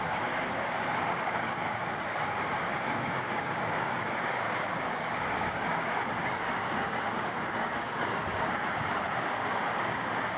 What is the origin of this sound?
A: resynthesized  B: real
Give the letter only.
A